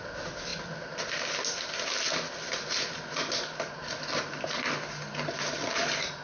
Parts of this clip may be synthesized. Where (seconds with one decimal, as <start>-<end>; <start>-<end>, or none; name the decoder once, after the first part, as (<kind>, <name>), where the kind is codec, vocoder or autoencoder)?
none